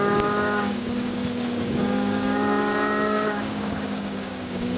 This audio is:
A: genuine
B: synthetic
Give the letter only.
B